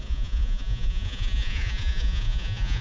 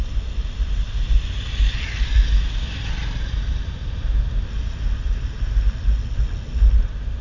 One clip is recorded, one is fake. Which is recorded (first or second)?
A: second